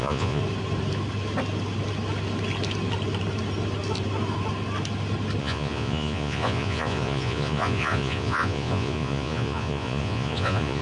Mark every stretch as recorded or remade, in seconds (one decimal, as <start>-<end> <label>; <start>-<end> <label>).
0.0-0.4 remade; 0.4-5.4 recorded; 5.4-10.8 remade